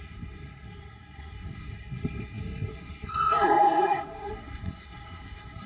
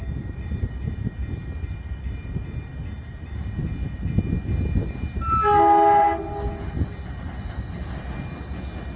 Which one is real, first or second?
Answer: second